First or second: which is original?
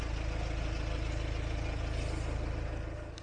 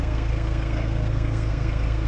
first